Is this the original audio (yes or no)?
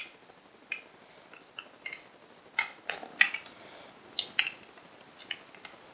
yes